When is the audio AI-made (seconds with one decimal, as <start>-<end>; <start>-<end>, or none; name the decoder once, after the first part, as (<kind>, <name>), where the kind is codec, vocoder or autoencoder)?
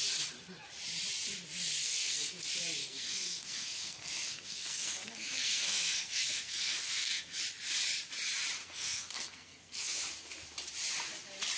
1.8-2.4 (codec, SNAC); 2.8-7.4; 8.6-10.0